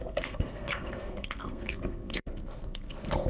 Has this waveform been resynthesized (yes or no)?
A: yes